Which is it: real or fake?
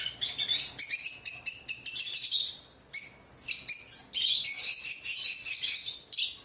real